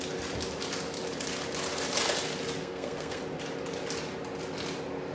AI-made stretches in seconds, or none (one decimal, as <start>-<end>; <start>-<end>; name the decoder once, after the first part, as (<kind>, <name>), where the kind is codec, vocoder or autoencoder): 2.6-3.2 (codec, SNAC)